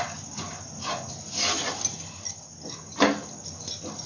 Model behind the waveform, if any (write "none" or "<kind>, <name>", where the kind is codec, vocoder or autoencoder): none